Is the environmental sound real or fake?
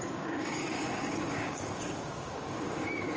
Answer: fake